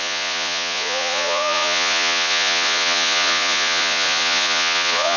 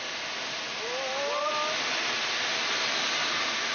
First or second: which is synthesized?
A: first